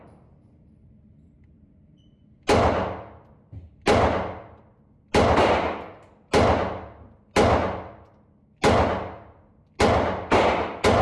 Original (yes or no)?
yes